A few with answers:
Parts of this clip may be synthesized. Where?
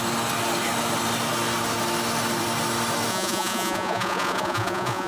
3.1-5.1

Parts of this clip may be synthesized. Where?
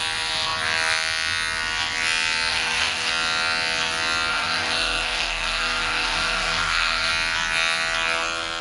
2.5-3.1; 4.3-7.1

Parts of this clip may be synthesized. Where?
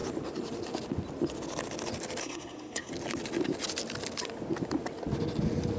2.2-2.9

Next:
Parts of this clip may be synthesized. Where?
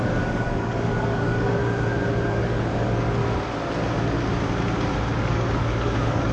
0.0-1.6; 2.3-3.2; 5.2-6.3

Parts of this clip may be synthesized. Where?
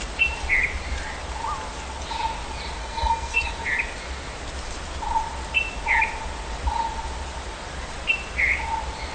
2.8-3.5